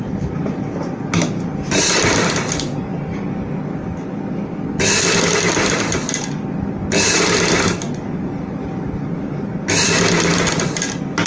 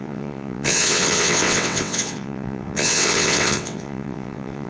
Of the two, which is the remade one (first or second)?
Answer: second